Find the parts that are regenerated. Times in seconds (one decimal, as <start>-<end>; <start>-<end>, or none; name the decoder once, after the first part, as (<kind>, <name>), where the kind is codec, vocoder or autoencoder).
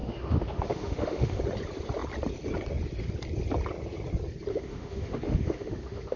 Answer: 0.0-1.4 (autoencoder, DAC-VAE); 4.5-6.2